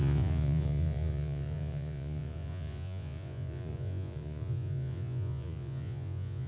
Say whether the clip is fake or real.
fake